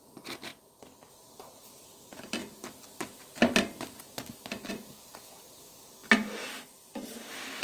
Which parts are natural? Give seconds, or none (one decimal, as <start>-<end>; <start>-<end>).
0.5-1.1; 2.4-4.7; 6.0-7.6